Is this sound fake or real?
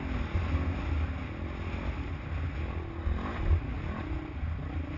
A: real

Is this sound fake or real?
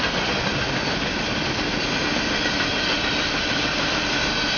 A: real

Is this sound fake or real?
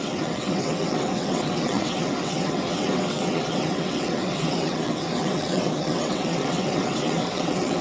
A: fake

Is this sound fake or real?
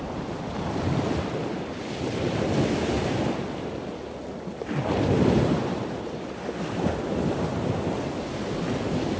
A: real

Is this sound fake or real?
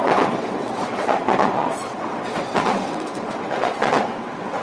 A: fake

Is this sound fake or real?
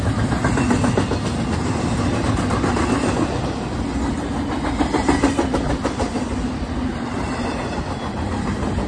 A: real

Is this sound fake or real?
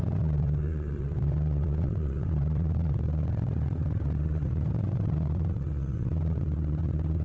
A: fake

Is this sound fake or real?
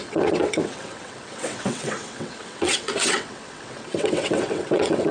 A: fake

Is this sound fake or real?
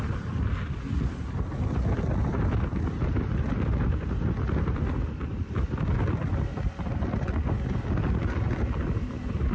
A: real